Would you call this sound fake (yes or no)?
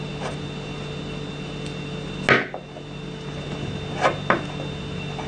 no